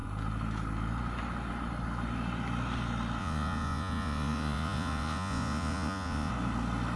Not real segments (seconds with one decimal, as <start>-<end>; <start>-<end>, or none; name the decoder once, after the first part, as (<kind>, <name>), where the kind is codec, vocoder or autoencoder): 3.2-6.3 (vocoder, Vocos)